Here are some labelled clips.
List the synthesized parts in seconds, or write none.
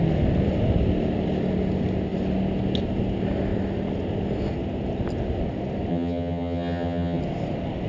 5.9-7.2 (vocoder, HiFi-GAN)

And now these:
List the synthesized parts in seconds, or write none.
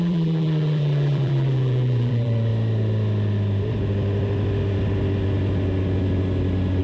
0.0-2.5 (vocoder, BigVGAN v2)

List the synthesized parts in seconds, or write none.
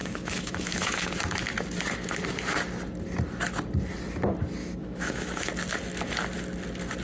0.0-1.1 (autoencoder, DAC-VAE); 4.6-5.5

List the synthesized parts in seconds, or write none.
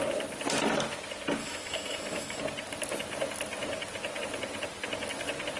1.4-2.4 (autoencoder, DAC-VAE)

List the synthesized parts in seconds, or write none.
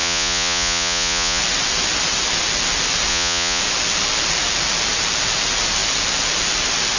0.0-1.4 (vocoder, Vocos); 3.1-3.6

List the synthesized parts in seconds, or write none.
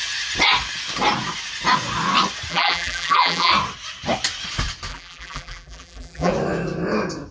2.5-3.5 (vocoder, BigVGAN v2); 4.9-6.3